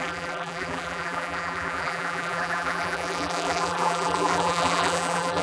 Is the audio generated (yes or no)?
yes